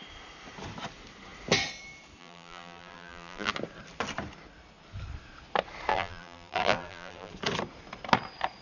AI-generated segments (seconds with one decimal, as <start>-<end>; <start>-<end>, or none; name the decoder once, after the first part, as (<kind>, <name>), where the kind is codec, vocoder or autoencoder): 2.2-3.5 (vocoder, BigVGAN v2); 5.9-7.3